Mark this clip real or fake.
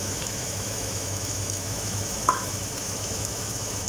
fake